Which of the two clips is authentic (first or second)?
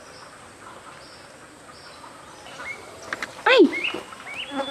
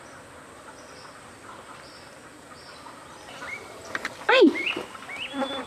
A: first